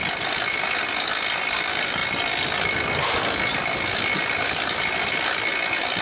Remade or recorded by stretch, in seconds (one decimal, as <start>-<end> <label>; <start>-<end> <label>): 0.0-6.0 recorded